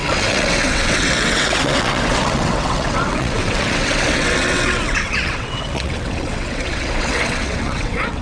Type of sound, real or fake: fake